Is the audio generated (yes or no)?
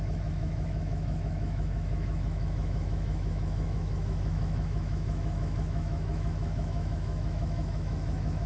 yes